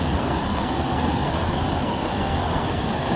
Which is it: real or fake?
fake